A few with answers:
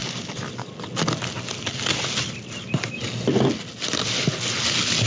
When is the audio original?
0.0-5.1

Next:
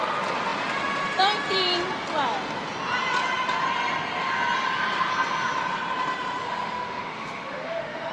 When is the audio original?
0.0-6.4

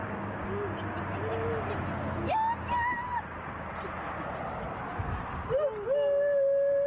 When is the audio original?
0.0-6.9